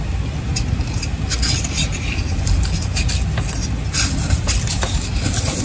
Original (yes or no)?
yes